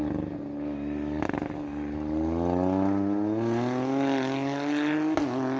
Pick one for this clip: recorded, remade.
recorded